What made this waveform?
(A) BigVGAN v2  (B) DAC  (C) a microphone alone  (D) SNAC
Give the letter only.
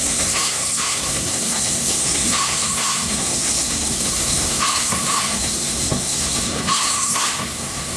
D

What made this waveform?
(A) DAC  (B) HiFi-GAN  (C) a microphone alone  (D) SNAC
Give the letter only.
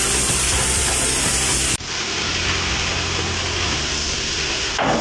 C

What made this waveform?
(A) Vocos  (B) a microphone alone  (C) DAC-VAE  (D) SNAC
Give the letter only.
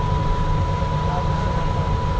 B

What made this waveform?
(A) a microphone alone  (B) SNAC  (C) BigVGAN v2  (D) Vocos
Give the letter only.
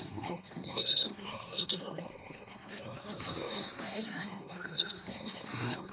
B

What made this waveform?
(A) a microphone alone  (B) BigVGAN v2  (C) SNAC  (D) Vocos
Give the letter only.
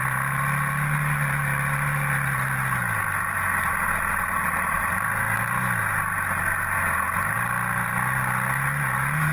A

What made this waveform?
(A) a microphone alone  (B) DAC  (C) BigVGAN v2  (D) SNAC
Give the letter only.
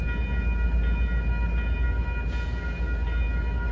A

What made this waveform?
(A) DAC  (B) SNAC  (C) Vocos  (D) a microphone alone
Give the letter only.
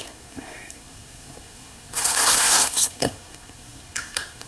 B